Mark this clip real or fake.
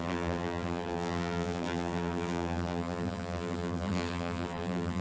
fake